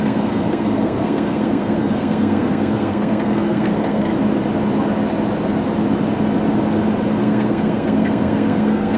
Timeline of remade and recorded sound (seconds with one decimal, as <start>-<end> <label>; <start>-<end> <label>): 0.0-4.1 remade; 4.1-7.2 recorded; 7.2-9.0 remade